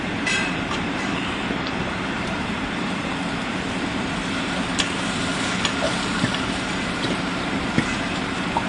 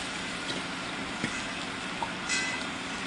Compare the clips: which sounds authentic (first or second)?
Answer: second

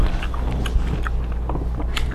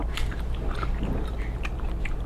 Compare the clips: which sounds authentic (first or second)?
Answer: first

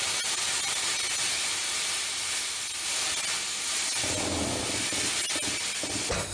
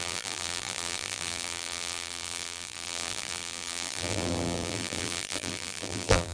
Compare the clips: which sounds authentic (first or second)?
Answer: first